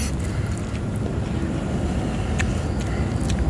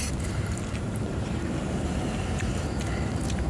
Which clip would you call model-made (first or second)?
second